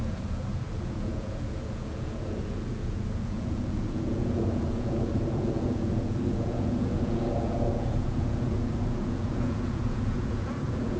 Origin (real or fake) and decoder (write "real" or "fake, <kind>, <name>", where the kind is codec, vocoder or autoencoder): fake, vocoder, Vocos